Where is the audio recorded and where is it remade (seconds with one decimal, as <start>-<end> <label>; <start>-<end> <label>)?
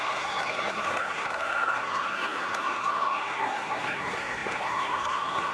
0.0-5.5 remade